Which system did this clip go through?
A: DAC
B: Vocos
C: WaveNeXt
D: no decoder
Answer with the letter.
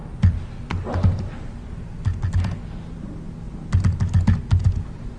D